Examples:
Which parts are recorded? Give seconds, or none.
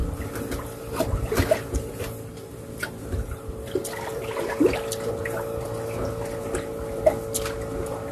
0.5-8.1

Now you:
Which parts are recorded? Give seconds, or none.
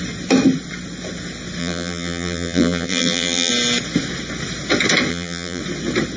0.0-1.6; 3.5-5.1; 5.6-6.2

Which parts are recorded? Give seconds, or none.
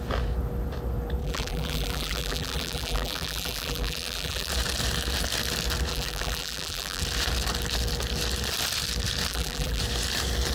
0.0-1.2; 4.5-5.9; 7.0-9.3; 9.8-10.5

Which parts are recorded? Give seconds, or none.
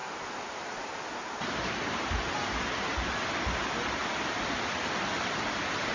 2.2-5.9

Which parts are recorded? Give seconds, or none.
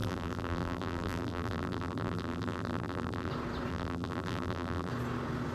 3.3-3.7; 4.9-5.5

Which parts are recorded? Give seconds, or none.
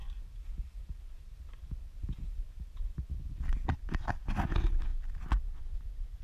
3.7-6.2